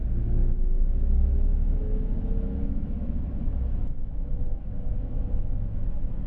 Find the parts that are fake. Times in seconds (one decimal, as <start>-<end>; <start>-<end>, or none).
0.0-6.3

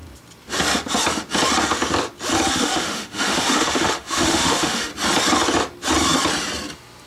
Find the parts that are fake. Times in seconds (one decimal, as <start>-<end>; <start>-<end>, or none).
2.5-4.9

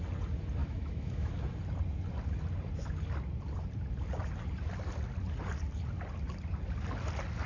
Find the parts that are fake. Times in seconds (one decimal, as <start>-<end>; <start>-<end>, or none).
0.6-1.3

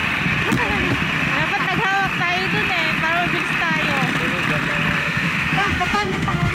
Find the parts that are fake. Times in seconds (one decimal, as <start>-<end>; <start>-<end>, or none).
5.0-6.5

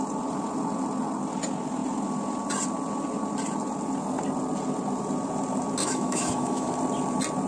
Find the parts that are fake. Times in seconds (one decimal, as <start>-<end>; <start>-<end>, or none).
5.8-6.7

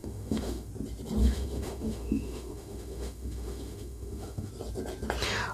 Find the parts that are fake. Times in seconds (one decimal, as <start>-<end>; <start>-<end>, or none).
0.0-0.7; 1.2-4.5

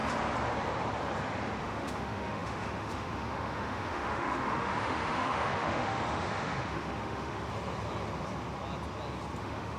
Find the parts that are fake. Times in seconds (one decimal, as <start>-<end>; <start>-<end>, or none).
1.6-7.5; 9.4-9.8

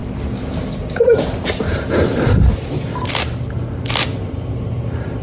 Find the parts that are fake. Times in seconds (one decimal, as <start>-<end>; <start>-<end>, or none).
none